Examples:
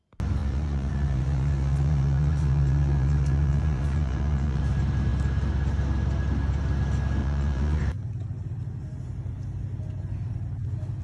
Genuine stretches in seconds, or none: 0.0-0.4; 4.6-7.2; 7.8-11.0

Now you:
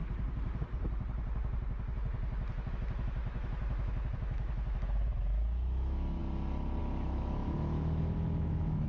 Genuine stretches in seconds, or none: 0.0-3.2; 6.2-6.8

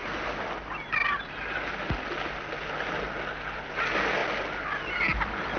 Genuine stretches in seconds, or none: 0.0-5.6

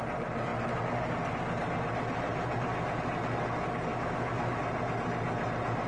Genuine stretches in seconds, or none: 0.0-3.9; 4.6-5.9

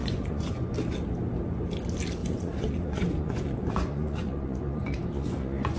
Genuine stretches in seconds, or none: 0.7-2.2

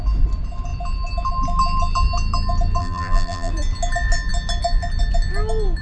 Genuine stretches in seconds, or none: 0.0-2.8; 3.5-5.8

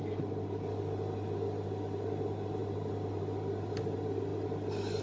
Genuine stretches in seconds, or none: 0.0-5.0

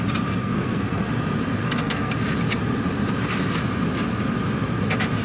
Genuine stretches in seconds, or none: 0.0-0.4; 1.1-1.6; 2.1-5.2